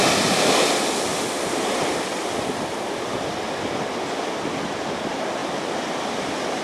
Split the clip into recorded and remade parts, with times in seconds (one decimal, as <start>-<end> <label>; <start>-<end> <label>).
0.0-1.1 recorded; 1.1-3.8 remade; 3.8-5.4 recorded; 5.4-6.0 remade; 6.0-6.6 recorded